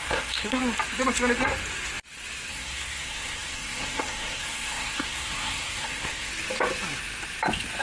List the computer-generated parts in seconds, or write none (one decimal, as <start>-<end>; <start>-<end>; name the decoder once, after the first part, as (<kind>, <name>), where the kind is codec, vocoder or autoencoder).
0.0-0.6 (codec, SNAC); 2.5-6.3